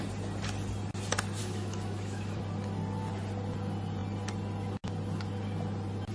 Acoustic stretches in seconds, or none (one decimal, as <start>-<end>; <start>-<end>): 0.0-1.4; 2.4-6.1